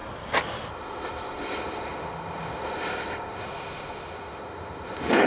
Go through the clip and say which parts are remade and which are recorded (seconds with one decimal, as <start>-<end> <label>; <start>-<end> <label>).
0.0-0.7 recorded; 0.7-5.3 remade